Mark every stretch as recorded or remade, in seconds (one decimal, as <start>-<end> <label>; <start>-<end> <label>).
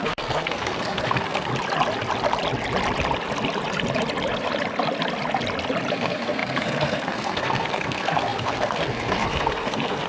0.0-1.5 remade; 1.5-5.9 recorded; 5.9-10.1 remade